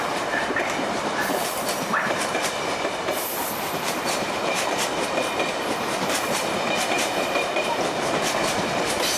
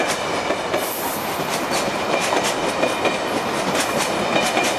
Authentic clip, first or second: second